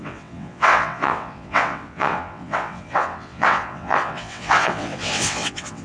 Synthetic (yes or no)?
yes